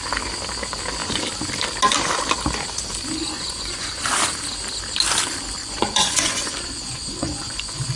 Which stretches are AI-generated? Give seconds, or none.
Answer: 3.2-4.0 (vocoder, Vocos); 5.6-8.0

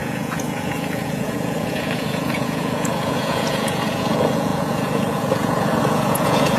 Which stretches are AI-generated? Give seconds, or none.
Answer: 0.0-6.6 (vocoder, Vocos)

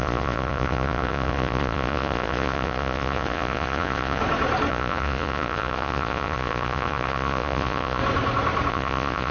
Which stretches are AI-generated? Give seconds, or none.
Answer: 0.0-4.2 (vocoder, Vocos); 4.7-8.0; 8.7-9.3

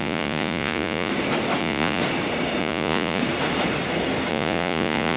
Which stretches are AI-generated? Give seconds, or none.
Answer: 0.0-1.1 (vocoder, Vocos); 1.6-2.0; 2.6-3.2; 4.3-5.2

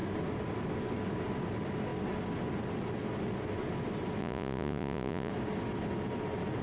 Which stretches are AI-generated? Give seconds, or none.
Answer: 4.2-5.3 (vocoder, Vocos)